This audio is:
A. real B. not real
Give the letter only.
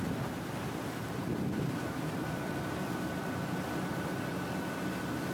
A